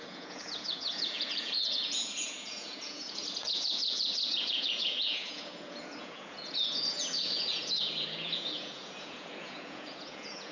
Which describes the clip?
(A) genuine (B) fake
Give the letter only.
B